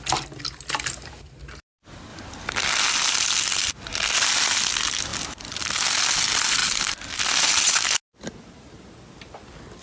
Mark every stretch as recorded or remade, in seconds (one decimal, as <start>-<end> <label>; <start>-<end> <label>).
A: 0.0-5.1 recorded; 5.1-6.0 remade; 6.0-6.6 recorded; 6.6-7.2 remade; 7.2-9.8 recorded